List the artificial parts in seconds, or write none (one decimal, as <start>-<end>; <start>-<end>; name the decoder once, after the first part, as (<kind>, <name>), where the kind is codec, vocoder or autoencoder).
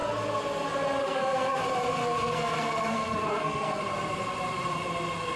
1.0-1.6 (codec, SNAC); 2.0-3.8